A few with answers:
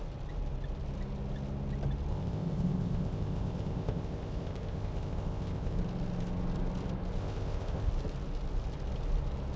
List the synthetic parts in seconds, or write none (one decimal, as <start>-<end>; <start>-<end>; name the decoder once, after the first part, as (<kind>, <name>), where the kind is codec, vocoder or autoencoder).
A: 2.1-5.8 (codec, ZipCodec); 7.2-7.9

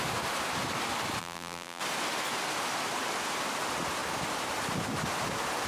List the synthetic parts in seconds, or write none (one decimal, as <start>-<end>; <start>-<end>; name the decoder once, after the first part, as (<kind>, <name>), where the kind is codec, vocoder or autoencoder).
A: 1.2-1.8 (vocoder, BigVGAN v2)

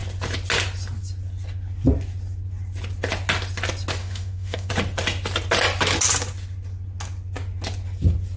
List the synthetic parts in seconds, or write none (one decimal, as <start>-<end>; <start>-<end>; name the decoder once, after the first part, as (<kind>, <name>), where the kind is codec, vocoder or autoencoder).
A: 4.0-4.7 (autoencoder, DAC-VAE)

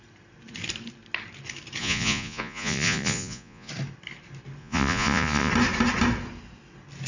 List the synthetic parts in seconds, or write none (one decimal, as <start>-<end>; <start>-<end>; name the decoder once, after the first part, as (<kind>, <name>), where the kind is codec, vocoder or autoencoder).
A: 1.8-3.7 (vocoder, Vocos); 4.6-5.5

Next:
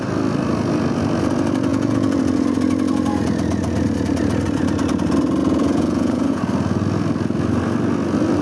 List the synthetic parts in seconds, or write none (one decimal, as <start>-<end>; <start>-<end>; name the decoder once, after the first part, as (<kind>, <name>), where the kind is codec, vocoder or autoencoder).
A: 1.7-2.2 (vocoder, Vocos); 5.4-6.4